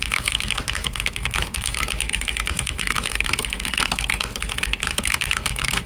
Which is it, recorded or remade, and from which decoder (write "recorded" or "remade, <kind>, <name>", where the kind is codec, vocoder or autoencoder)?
remade, codec, SNAC